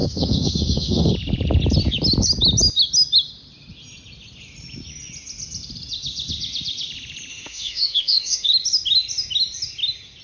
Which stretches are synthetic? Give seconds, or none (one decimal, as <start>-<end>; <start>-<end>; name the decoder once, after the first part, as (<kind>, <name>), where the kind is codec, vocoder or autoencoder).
0.0-1.1 (autoencoder, DAC-VAE); 7.3-8.5